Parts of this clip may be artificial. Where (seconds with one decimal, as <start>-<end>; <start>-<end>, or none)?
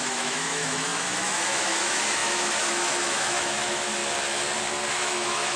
0.0-4.0; 4.9-5.6